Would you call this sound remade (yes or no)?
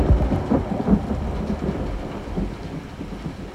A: no